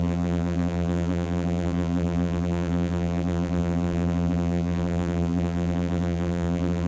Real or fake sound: fake